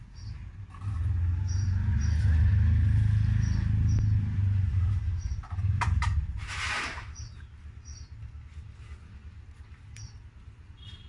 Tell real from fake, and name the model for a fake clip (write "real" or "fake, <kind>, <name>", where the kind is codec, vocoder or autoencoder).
real